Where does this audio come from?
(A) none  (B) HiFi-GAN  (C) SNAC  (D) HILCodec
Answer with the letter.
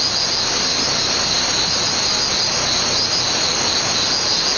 A